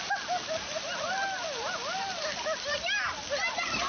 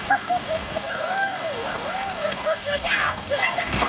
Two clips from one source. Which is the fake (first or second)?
second